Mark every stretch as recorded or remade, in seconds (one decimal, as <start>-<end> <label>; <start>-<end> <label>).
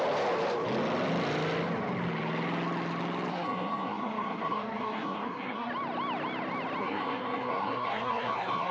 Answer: 0.0-3.3 recorded; 3.3-5.7 remade; 5.7-6.8 recorded; 6.8-8.7 remade